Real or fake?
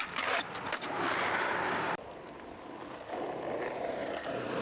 fake